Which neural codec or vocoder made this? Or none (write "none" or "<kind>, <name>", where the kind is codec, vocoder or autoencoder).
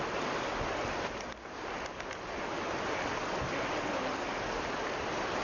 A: none